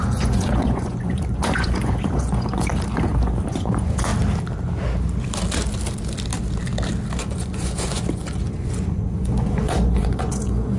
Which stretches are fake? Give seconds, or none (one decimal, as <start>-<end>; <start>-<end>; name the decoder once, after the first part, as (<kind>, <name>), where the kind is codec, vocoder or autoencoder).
0.0-2.7 (vocoder, Vocos); 3.5-4.1; 7.2-10.8